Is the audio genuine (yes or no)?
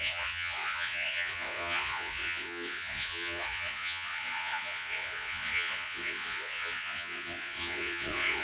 no